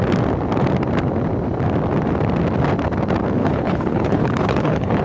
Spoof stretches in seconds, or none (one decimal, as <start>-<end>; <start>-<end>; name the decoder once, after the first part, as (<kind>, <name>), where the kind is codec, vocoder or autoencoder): 3.4-5.0 (codec, HILCodec)

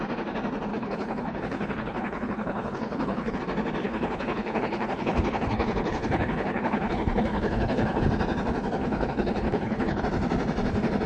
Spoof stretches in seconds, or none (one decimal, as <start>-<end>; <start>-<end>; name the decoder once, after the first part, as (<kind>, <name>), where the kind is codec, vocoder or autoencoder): 0.7-3.4 (codec, HILCodec); 3.8-8.0; 8.8-10.0

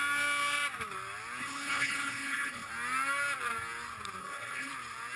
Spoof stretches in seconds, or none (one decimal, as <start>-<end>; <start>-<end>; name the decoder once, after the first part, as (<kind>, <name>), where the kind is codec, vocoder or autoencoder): 1.4-2.7 (codec, HILCodec); 4.2-4.7

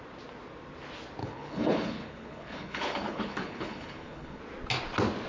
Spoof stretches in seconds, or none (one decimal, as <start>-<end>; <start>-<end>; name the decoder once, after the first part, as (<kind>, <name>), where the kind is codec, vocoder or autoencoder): 1.2-4.4 (codec, HILCodec)

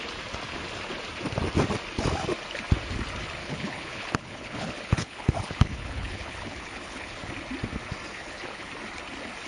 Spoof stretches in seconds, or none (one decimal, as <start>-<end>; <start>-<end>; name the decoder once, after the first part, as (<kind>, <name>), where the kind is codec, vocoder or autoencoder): 3.4-7.3 (codec, HILCodec); 8.1-8.7

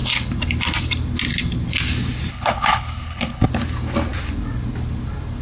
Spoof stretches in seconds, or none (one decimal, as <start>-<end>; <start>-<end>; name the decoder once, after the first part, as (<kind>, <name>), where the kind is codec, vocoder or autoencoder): 2.3-3.5 (codec, HILCodec)

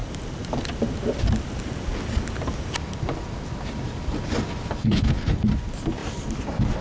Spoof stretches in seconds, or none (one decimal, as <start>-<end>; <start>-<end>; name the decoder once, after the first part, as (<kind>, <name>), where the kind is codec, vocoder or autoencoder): 4.8-5.4 (codec, HILCodec)